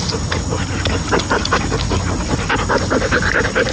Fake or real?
real